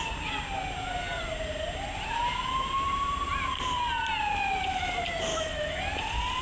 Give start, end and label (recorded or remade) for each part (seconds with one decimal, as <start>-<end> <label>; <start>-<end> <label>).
0.0-5.3 recorded; 5.3-5.8 remade; 5.8-6.4 recorded